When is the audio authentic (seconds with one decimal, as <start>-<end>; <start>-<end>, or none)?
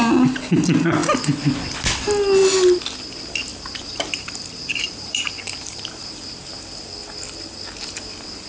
0.0-3.5; 6.1-8.5